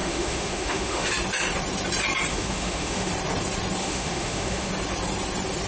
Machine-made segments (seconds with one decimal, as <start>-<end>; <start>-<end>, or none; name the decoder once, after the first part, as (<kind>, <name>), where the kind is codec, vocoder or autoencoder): 0.0-1.1 (autoencoder, DAC-VAE); 2.3-3.1; 3.8-4.7